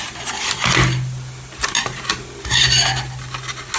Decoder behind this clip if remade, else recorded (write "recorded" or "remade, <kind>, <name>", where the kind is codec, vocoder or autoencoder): recorded